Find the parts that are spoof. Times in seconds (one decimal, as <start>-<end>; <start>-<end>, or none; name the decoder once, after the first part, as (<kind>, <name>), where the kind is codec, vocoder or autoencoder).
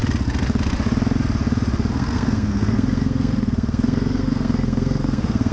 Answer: 1.9-5.5 (codec, SNAC)